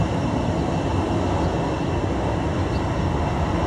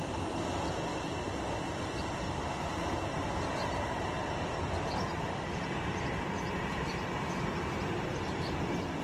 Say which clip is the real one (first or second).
first